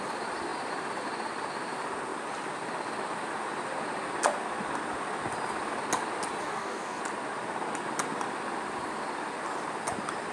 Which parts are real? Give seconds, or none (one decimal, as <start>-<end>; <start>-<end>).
0.0-6.4; 7.0-10.3